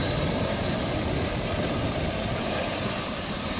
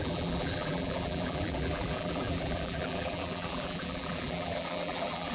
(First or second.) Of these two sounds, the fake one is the second